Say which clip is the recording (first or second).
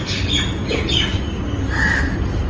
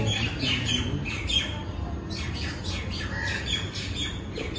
first